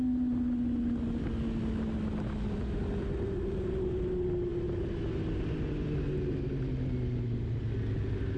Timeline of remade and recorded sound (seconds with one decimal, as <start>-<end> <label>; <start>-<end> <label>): 0.0-8.4 recorded